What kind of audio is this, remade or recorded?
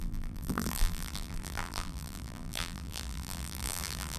remade